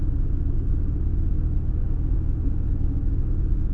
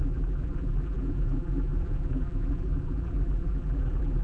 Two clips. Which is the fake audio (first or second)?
second